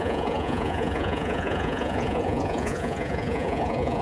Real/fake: fake